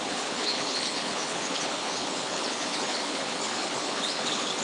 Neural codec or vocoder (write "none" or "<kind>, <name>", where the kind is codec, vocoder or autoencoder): codec, HILCodec